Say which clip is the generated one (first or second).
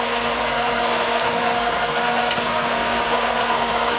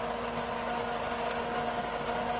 first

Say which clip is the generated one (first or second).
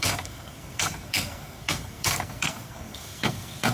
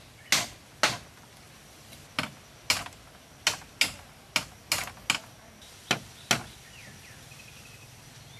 first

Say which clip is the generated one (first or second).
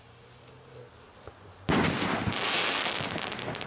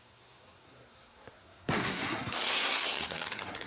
second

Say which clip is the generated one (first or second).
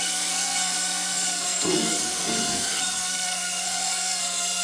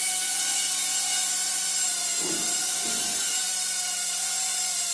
first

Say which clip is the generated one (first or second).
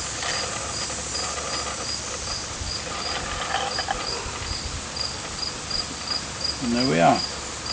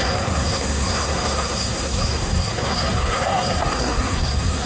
second